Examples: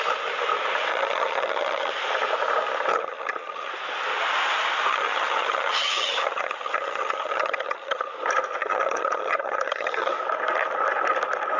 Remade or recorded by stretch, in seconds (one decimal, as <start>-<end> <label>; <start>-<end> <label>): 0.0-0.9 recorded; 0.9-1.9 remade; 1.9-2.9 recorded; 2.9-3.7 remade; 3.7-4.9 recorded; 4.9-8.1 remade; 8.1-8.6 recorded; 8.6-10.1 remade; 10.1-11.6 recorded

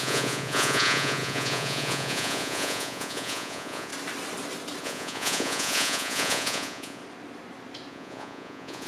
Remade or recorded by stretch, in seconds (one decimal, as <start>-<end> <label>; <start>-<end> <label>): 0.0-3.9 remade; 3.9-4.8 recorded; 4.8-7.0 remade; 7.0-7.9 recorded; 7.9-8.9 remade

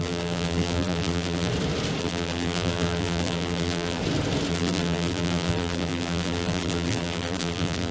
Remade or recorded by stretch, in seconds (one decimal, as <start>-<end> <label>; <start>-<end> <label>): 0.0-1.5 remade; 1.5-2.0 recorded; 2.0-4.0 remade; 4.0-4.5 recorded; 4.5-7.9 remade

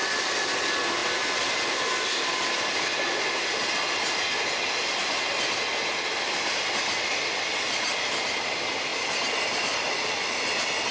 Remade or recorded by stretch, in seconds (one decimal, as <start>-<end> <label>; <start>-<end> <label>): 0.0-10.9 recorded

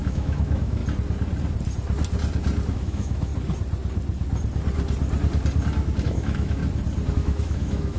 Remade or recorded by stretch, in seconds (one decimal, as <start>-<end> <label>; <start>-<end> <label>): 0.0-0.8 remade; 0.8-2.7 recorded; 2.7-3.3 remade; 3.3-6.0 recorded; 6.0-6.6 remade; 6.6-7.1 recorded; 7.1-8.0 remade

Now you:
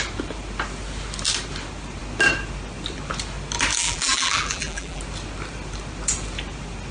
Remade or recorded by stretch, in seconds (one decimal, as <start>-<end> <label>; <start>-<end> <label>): 0.0-3.7 recorded; 3.7-5.0 remade; 5.0-6.9 recorded

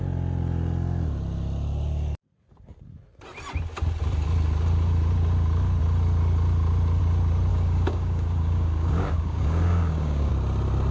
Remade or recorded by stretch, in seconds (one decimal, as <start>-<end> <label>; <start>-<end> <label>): 0.0-7.5 recorded; 7.5-10.3 remade; 10.3-10.9 recorded